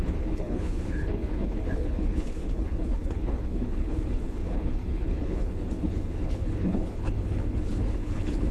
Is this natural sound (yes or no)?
no